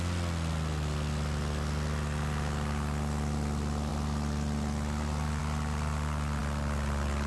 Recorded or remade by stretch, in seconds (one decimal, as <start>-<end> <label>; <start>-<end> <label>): 0.0-7.3 recorded